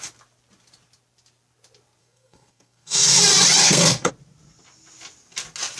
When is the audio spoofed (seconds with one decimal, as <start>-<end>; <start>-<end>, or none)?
2.0-3.2; 3.6-4.1